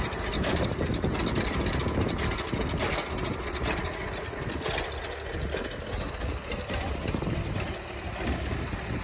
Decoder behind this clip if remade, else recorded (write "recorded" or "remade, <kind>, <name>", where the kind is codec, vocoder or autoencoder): recorded